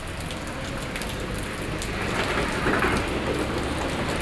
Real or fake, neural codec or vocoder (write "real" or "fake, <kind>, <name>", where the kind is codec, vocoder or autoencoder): real